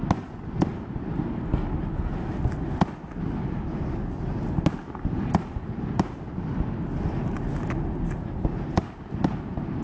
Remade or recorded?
recorded